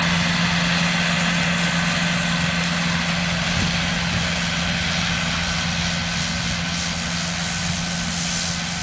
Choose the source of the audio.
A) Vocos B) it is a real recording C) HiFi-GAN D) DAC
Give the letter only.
B